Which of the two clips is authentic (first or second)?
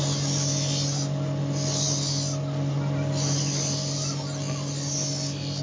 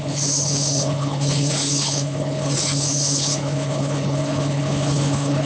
first